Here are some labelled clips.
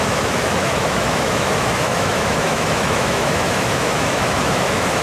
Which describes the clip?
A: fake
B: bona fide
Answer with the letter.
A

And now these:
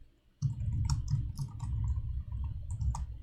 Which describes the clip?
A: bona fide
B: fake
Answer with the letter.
A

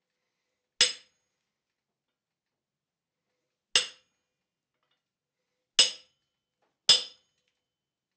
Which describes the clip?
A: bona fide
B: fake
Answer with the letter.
A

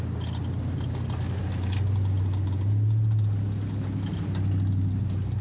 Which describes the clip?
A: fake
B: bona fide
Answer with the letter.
B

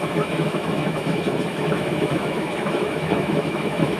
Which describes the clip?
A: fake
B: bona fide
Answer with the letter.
A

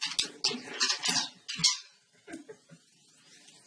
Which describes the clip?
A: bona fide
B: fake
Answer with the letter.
A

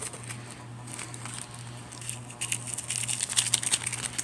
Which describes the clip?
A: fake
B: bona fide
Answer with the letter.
B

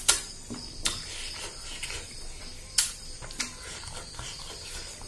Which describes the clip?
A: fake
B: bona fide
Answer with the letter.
B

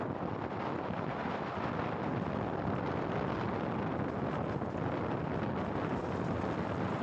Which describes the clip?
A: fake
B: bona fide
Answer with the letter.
B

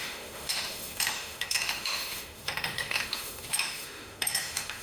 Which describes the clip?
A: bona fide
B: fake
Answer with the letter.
B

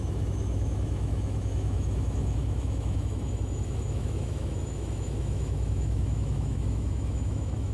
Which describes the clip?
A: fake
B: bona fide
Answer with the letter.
A